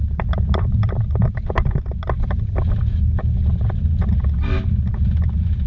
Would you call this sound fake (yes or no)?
no